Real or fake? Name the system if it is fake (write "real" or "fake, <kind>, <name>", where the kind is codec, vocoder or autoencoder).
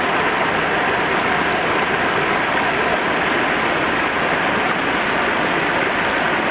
real